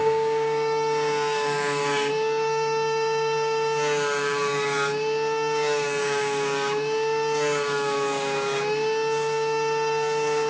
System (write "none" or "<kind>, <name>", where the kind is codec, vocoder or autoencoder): codec, DAC